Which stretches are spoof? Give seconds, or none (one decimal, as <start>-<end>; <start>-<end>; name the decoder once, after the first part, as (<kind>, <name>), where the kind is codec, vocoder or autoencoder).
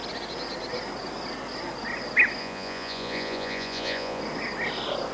2.4-4.2 (vocoder, Vocos)